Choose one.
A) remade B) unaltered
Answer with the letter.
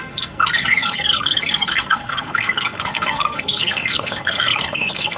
A